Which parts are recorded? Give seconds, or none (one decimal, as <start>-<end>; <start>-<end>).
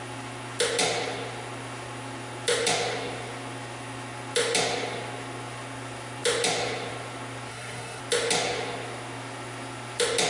0.0-7.5; 8.0-10.3